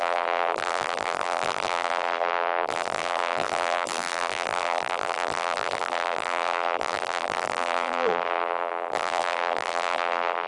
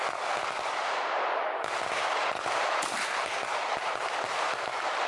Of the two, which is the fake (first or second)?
first